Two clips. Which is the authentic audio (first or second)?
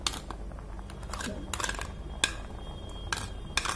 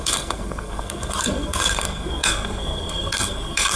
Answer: first